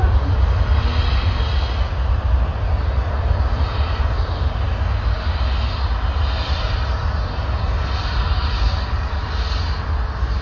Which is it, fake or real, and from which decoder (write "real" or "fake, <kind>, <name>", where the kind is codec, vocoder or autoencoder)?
real